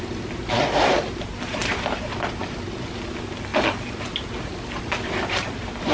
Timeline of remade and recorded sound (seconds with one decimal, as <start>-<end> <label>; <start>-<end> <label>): 0.0-3.5 remade; 3.5-4.4 recorded; 4.4-5.9 remade